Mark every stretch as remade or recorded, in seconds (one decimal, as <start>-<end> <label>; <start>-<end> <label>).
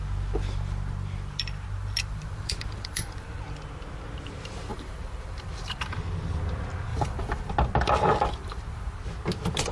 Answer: 0.0-1.8 recorded; 1.8-3.4 remade; 3.4-4.7 recorded; 4.7-6.0 remade; 6.0-6.9 recorded; 6.9-7.5 remade; 7.5-8.4 recorded; 8.4-9.0 remade; 9.0-9.7 recorded